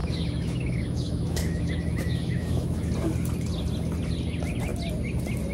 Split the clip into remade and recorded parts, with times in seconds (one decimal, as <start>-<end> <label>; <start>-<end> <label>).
0.0-2.9 remade; 2.9-5.5 recorded